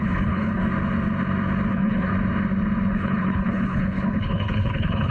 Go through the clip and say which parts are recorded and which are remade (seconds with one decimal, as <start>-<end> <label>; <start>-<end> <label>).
0.0-0.6 remade; 0.6-1.7 recorded; 1.7-2.1 remade; 2.1-2.9 recorded; 2.9-5.1 remade